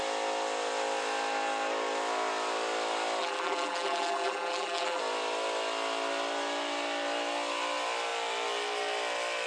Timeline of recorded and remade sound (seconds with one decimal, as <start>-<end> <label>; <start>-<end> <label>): 0.0-3.2 recorded; 3.2-5.0 remade; 5.0-9.5 recorded